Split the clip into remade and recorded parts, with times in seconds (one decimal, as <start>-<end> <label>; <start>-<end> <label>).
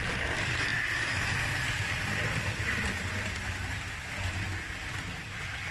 0.0-5.7 remade